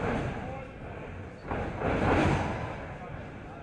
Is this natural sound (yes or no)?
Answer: yes